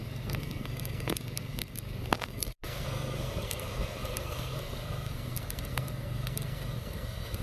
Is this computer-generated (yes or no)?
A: yes